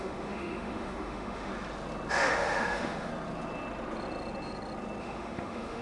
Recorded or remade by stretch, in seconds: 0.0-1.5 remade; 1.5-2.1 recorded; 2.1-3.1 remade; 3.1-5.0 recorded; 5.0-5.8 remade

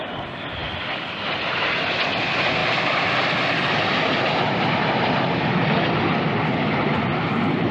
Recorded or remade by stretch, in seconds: 0.0-7.7 recorded

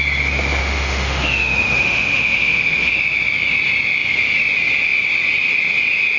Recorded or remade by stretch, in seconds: 0.0-0.6 recorded; 0.6-2.9 remade; 2.9-6.2 recorded